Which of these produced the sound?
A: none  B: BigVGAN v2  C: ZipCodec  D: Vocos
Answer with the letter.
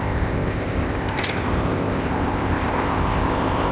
C